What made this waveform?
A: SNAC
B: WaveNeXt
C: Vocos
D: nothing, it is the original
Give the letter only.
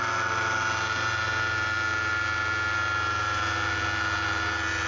D